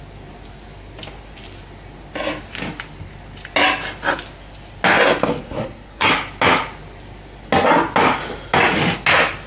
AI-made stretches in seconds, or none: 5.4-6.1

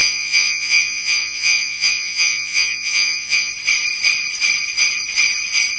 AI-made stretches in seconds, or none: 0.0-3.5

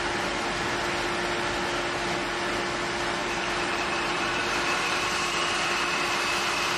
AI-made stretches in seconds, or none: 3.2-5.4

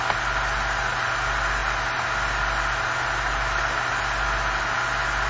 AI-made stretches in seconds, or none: none

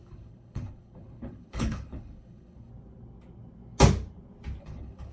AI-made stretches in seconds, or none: 0.0-2.7; 4.6-5.1

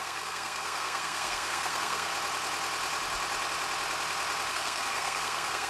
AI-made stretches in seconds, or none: 0.0-2.1; 4.5-5.7